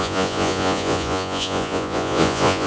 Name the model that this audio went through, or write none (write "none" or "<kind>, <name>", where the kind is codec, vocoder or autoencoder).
vocoder, Vocos